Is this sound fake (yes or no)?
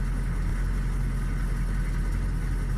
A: no